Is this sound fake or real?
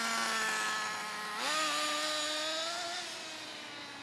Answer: real